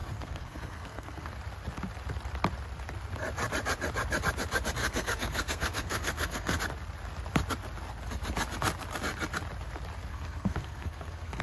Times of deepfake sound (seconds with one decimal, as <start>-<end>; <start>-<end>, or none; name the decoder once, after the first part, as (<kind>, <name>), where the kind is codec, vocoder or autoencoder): 0.0-1.3 (codec, SNAC); 4.8-6.6; 10.1-11.4